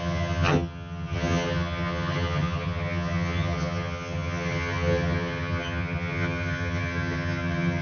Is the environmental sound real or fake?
fake